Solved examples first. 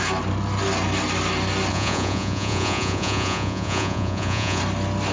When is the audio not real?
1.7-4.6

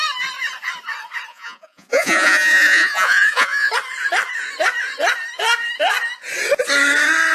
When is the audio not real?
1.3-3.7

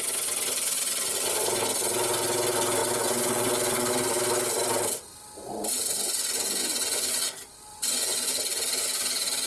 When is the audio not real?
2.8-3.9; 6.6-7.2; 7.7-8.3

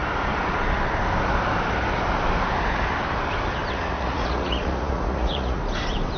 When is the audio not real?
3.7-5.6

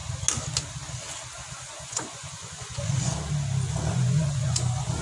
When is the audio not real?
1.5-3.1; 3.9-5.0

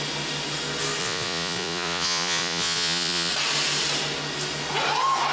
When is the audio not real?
1.0-3.3